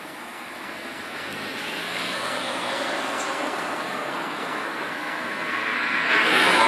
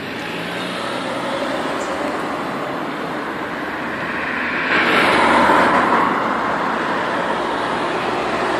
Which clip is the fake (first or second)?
first